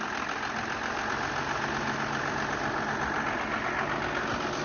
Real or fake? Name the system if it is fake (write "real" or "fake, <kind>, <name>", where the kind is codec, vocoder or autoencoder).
real